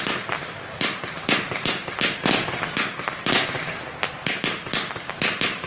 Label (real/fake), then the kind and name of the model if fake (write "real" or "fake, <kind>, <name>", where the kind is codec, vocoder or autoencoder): real